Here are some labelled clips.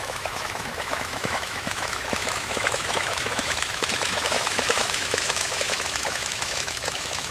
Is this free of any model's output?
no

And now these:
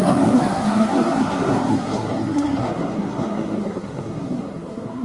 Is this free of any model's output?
no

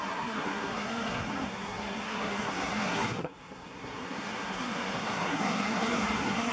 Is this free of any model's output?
no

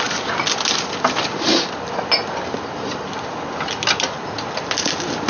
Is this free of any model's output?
yes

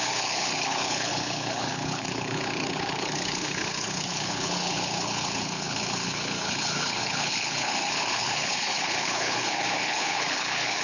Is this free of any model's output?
no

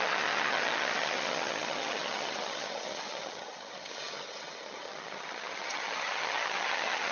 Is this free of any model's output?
no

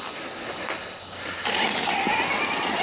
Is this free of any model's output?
yes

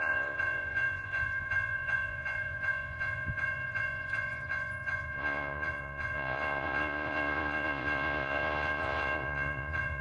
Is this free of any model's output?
no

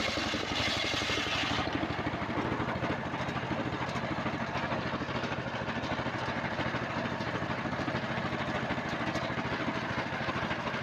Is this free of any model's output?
yes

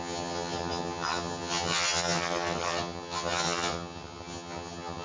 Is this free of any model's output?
no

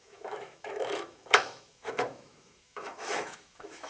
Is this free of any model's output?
no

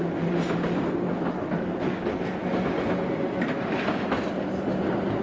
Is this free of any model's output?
yes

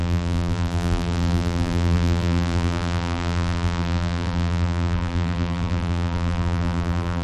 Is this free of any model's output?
no